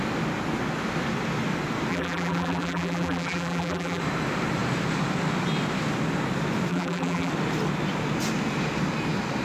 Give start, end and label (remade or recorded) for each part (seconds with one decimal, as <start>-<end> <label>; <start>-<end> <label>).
0.0-1.9 recorded; 1.9-4.0 remade; 4.0-6.7 recorded; 6.7-7.3 remade; 7.3-9.4 recorded